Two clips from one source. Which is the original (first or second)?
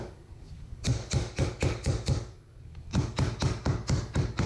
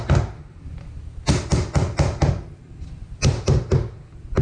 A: second